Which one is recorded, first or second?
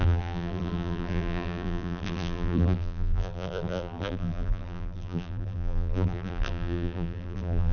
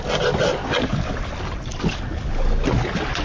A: second